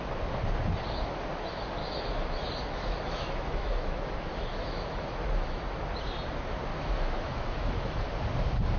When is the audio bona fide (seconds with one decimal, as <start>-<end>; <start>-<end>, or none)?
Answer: 0.0-1.8; 5.6-6.7; 8.1-8.8